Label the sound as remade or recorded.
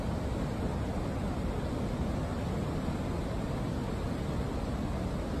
recorded